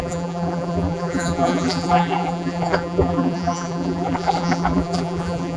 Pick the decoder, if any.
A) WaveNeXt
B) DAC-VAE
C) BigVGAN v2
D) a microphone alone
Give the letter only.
C